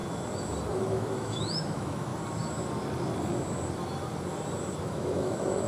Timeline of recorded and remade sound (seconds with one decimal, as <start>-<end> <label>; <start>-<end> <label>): 0.0-0.7 recorded; 0.7-2.1 remade; 2.1-4.8 recorded; 4.8-5.7 remade